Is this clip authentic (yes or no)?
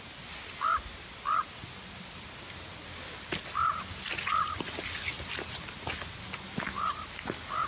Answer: yes